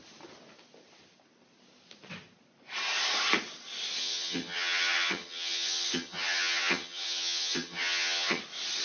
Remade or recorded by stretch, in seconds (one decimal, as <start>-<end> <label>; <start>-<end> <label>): 0.0-4.0 recorded; 4.0-8.4 remade; 8.4-8.8 recorded